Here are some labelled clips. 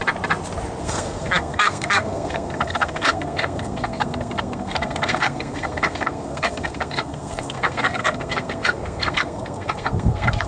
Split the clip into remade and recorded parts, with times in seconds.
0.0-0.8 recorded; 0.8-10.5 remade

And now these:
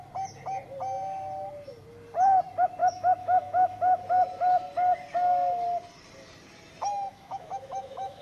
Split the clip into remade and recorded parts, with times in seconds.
0.0-2.8 recorded; 2.8-4.0 remade; 4.0-7.1 recorded; 7.1-8.2 remade